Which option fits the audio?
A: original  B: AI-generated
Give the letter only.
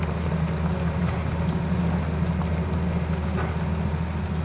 A